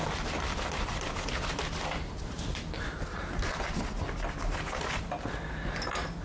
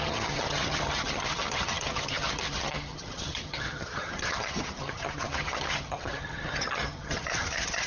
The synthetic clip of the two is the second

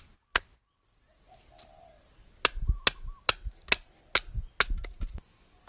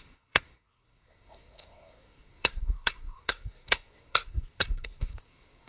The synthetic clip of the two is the second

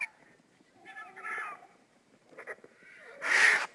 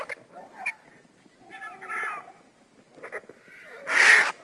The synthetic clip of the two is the first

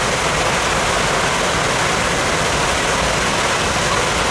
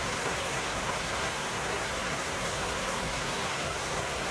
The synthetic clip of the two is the second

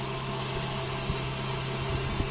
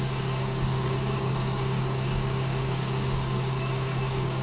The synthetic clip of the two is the second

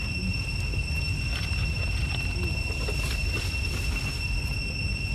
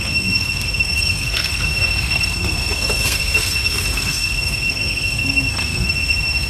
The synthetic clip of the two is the second